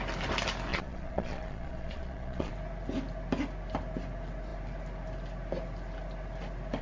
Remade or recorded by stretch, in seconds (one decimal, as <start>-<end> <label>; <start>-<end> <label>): 0.0-0.7 recorded; 0.7-2.5 remade; 2.5-6.8 recorded